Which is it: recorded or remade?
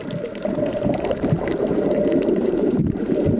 remade